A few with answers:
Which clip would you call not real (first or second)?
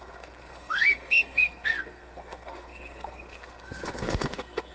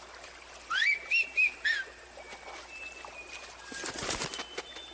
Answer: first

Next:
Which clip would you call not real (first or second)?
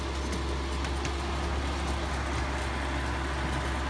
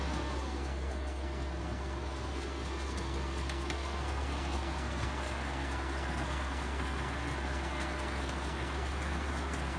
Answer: second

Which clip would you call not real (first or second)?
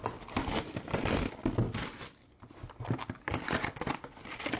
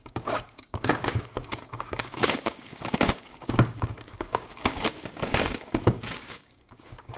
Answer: second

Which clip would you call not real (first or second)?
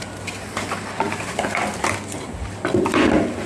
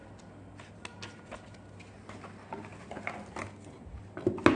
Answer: first